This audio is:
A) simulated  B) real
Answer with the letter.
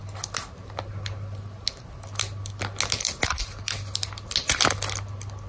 B